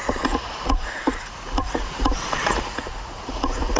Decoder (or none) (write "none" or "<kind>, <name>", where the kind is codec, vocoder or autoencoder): vocoder, Vocos